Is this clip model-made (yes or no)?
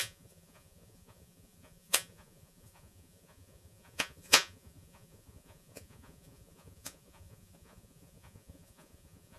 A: yes